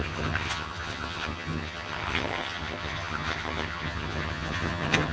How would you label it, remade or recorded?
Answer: remade